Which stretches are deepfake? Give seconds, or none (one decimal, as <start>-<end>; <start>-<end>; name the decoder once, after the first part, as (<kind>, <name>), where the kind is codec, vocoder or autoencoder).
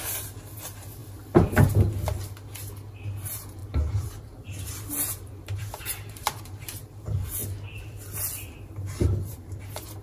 0.0-1.0 (vocoder, BigVGAN v2); 3.2-7.4; 8.6-10.0